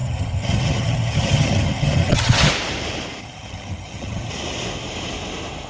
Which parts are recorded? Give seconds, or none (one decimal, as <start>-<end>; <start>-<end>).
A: 2.5-3.2; 4.3-5.7